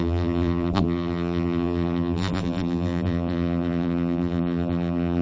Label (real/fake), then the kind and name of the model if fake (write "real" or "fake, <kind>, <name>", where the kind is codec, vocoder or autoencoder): fake, vocoder, BigVGAN v2